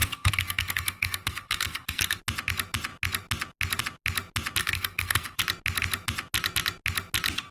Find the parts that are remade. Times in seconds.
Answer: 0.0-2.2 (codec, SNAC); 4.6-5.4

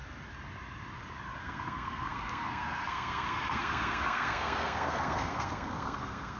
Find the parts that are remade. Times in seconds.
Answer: 1.4-6.4 (codec, SNAC)

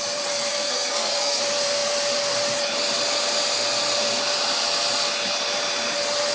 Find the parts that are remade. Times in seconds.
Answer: 0.5-1.4 (codec, SNAC)

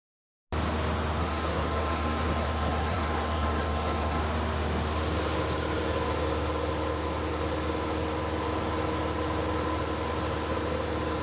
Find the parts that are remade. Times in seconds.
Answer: 1.2-4.2 (codec, SNAC)